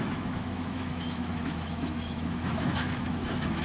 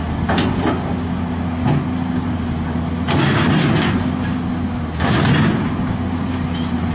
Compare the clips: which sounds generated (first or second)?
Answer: first